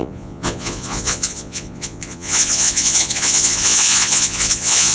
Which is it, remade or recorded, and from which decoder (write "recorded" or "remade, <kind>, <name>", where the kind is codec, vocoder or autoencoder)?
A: remade, vocoder, Vocos